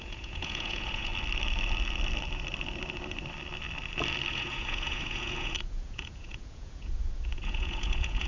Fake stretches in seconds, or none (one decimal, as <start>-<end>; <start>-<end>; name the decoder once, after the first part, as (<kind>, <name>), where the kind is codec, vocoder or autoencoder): 0.0-1.1 (vocoder, Vocos); 4.3-8.3